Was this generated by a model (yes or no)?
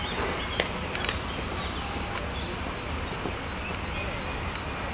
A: no